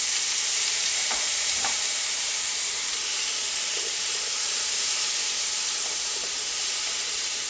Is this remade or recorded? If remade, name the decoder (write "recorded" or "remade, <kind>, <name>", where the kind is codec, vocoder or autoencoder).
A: remade, vocoder, BigVGAN v2